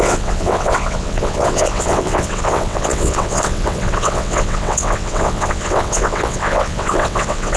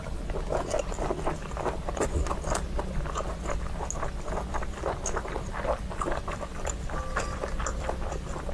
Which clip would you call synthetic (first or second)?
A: first